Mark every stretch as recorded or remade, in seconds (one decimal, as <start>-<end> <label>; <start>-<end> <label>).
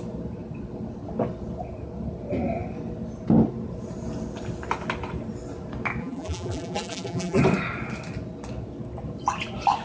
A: 0.0-6.0 recorded; 6.0-7.4 remade; 7.4-9.8 recorded